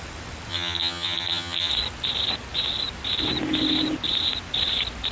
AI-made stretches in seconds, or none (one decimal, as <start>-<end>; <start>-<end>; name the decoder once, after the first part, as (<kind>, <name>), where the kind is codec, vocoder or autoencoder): 0.5-1.7 (vocoder, HiFi-GAN)